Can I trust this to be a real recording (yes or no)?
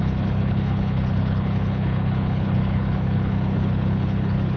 no